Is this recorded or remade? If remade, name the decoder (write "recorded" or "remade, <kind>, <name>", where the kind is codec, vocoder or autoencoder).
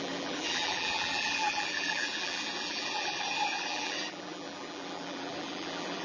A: remade, vocoder, BigVGAN v2